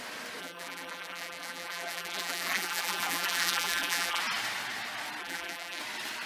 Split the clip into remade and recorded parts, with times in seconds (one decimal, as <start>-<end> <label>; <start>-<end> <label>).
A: 0.0-0.4 recorded; 0.4-4.2 remade; 4.2-5.2 recorded; 5.2-5.8 remade; 5.8-6.3 recorded